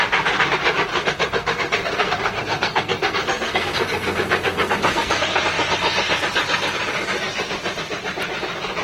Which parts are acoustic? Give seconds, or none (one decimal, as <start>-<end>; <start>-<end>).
0.0-0.9; 5.4-8.8